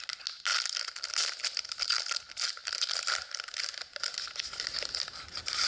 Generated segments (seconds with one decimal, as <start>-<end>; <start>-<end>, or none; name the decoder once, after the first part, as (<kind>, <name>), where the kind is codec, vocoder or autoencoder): none